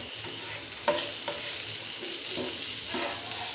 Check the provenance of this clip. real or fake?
real